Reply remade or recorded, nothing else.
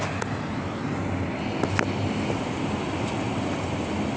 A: recorded